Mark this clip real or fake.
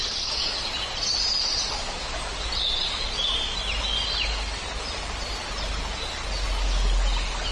real